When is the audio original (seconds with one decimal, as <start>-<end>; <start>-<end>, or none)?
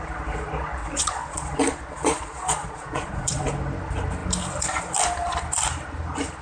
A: 0.0-0.8; 3.4-6.4